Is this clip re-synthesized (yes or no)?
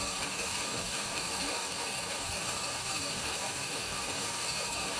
yes